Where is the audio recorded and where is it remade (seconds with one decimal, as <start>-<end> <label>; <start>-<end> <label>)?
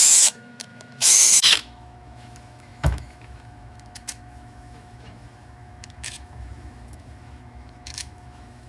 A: 0.0-8.7 remade